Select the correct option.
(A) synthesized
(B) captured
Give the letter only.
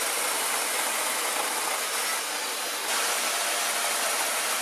B